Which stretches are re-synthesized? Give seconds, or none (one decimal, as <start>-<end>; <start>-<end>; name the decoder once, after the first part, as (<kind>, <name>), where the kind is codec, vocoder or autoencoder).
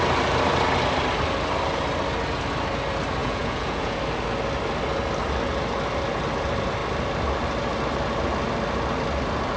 3.2-4.0 (vocoder, Vocos)